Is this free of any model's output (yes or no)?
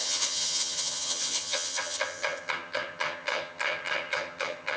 no